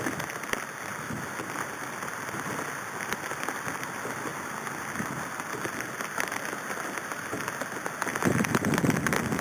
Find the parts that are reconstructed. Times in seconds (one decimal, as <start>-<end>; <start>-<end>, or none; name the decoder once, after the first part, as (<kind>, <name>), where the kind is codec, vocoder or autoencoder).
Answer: none